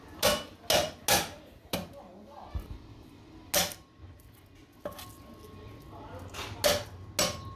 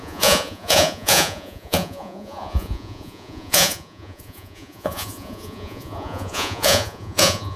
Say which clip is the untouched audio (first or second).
first